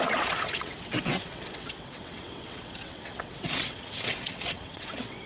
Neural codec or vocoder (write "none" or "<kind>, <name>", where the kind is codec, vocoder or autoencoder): vocoder, WaveNeXt